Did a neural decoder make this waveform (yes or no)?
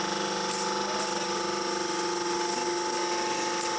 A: no